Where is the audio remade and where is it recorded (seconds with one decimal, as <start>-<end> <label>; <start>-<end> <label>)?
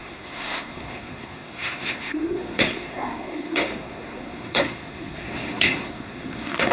0.0-6.7 remade